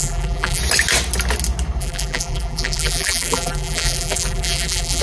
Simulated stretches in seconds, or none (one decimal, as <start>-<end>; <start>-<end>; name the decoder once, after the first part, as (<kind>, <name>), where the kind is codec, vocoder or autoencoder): 0.0-0.6 (vocoder, BigVGAN v2); 1.8-5.0